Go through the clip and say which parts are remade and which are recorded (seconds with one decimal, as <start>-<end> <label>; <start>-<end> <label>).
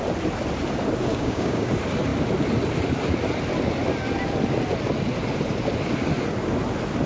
0.0-1.1 recorded; 1.1-1.7 remade; 1.7-7.1 recorded